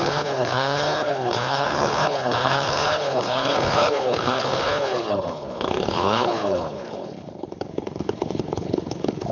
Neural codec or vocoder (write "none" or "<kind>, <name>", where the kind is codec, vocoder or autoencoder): codec, HILCodec